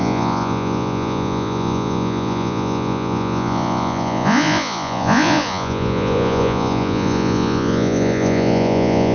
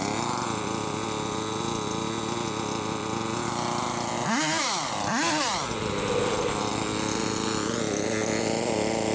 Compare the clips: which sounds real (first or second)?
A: second